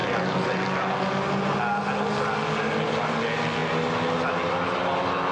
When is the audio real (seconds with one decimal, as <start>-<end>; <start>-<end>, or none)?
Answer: 0.0-5.3